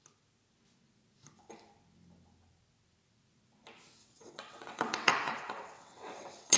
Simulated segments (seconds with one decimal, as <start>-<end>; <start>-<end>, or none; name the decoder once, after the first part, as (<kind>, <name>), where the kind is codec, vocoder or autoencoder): 4.0-6.6 (vocoder, WaveNeXt)